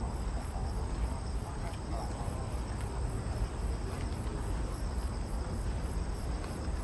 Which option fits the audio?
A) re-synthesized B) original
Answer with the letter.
B